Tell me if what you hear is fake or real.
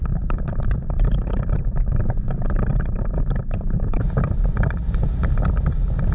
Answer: real